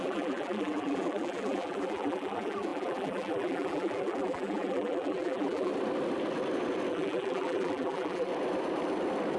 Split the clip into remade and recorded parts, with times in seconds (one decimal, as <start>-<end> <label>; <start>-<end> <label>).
0.0-5.7 remade; 5.7-6.9 recorded; 6.9-8.3 remade; 8.3-9.4 recorded